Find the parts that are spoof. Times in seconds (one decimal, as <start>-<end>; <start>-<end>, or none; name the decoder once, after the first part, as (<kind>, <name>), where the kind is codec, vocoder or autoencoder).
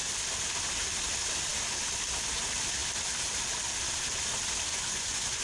4.7-5.4 (vocoder, Vocos)